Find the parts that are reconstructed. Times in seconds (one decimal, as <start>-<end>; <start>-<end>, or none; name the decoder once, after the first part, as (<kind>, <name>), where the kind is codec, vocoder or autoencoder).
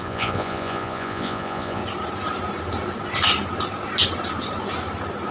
0.0-1.8 (vocoder, Vocos)